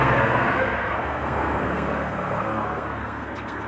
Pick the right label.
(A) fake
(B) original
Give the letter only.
A